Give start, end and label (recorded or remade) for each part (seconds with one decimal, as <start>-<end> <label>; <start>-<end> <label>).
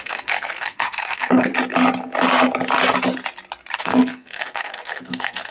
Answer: 0.0-1.5 remade; 1.5-3.8 recorded; 3.8-5.5 remade